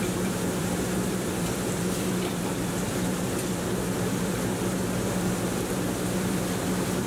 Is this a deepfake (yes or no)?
yes